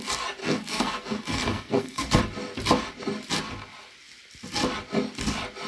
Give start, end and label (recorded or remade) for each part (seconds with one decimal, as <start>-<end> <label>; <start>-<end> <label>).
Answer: 0.0-0.4 recorded; 0.4-2.2 remade; 2.2-5.7 recorded